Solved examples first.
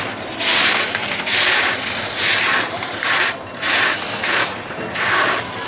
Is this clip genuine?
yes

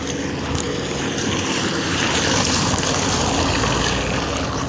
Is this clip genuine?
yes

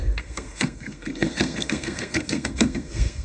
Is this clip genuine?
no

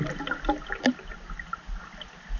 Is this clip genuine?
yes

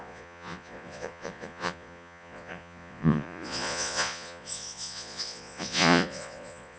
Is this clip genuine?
no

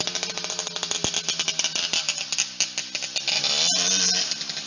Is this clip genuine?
yes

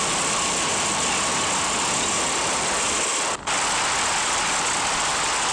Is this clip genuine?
yes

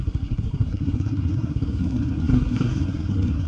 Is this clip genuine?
no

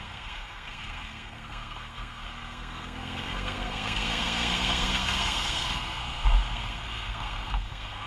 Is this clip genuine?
no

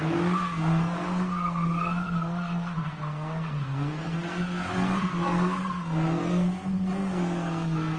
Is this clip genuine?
no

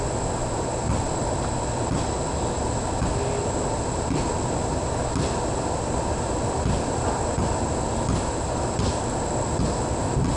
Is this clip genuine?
yes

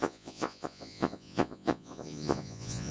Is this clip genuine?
no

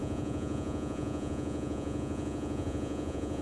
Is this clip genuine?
no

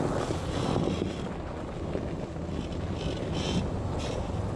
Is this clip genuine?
yes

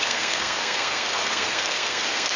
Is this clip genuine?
no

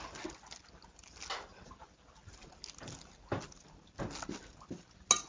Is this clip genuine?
yes